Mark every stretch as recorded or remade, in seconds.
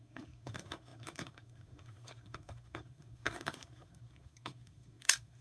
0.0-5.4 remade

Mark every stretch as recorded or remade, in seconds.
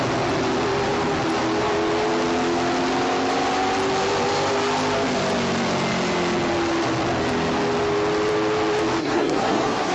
0.0-9.0 recorded; 9.0-9.9 remade